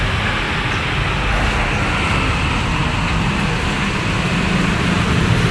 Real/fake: real